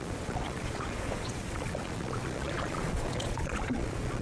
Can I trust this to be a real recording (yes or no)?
no